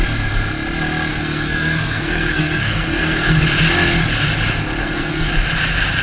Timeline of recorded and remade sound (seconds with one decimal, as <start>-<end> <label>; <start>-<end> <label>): 0.0-1.1 recorded; 1.1-3.4 remade; 3.4-4.8 recorded; 4.8-5.3 remade; 5.3-6.0 recorded